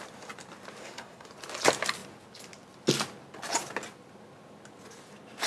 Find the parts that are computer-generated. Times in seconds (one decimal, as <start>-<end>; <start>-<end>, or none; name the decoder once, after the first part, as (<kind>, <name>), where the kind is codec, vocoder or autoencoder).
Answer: 0.8-1.3 (codec, SNAC)